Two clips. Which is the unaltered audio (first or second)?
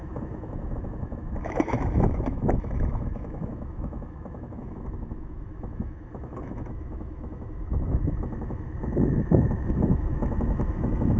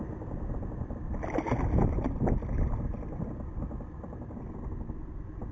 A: second